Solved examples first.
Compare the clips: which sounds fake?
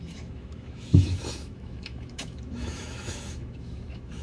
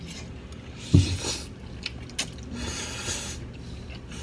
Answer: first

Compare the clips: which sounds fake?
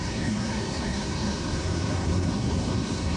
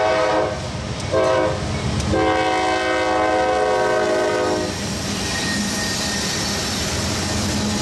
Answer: first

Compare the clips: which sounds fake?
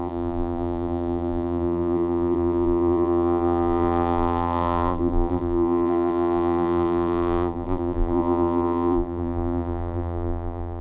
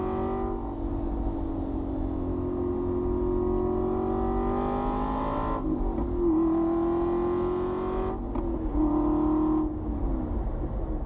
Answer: first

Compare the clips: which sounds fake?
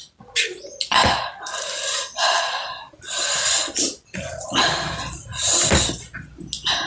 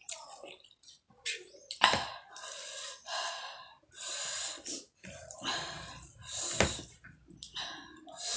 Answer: second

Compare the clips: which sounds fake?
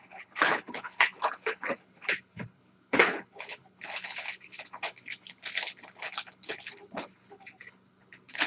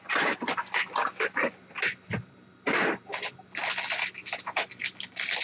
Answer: first